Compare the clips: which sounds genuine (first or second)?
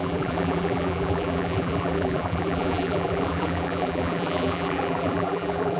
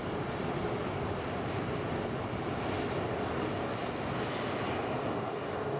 second